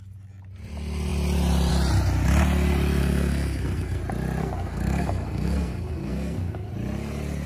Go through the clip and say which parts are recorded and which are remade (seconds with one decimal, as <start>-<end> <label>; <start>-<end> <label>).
0.0-3.0 recorded; 3.0-4.0 remade; 4.0-4.4 recorded; 4.4-6.7 remade; 6.7-7.5 recorded

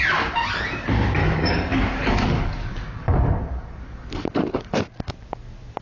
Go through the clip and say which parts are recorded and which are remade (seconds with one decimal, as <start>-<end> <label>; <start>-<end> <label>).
0.0-1.2 recorded; 1.2-4.7 remade; 4.7-5.8 recorded

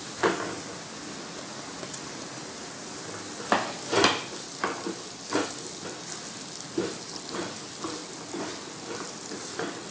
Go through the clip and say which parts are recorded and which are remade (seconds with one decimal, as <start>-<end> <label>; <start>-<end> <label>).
0.0-9.9 recorded

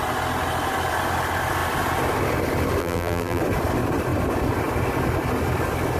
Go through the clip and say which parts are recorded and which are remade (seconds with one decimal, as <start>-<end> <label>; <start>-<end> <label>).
0.0-2.8 recorded; 2.8-3.4 remade; 3.4-6.0 recorded

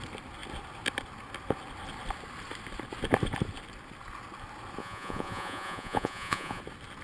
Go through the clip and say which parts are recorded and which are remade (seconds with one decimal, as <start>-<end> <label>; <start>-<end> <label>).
0.0-4.8 recorded; 4.8-6.6 remade; 6.6-7.0 recorded